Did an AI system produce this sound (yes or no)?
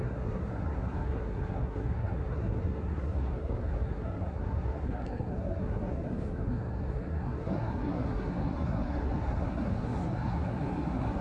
yes